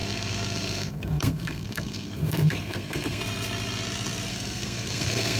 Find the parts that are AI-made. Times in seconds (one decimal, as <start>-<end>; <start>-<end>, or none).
0.0-3.2; 4.3-5.4